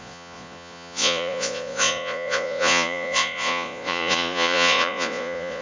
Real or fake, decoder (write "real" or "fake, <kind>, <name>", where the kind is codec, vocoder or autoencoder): fake, vocoder, Vocos